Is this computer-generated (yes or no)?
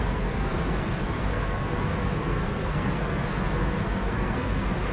yes